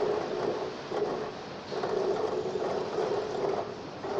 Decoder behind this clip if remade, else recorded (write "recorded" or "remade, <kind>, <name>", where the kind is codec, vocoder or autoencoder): recorded